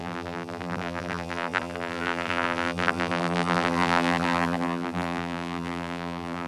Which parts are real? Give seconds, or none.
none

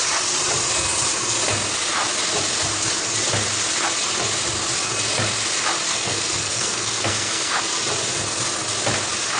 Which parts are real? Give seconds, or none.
0.0-5.9; 7.6-9.4

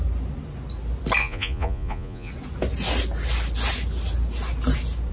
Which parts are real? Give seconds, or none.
0.0-1.2; 2.3-5.1

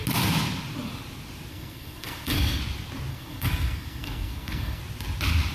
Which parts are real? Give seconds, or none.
0.0-1.5; 2.6-3.1; 4.8-5.5

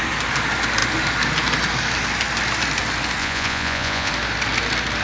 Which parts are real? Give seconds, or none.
0.0-3.2; 4.1-5.0